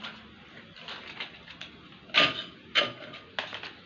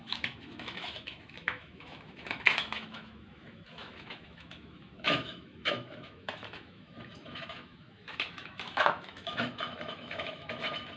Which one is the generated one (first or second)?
second